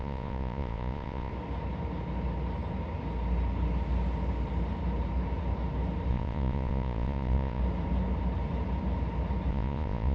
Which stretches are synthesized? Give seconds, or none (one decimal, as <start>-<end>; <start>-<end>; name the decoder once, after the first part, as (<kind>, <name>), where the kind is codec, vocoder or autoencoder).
0.0-1.3 (vocoder, Vocos); 6.1-7.6; 9.5-10.1